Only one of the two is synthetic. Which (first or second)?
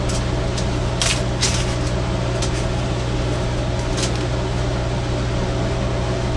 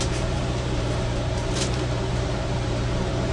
second